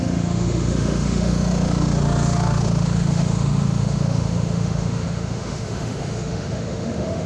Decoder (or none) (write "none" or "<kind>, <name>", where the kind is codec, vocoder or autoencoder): autoencoder, DAC-VAE